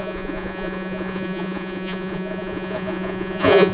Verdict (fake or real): fake